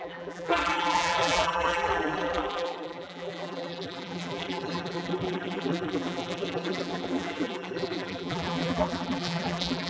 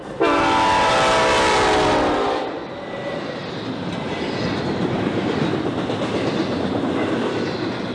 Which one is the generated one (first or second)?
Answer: first